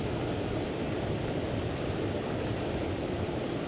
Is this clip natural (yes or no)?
yes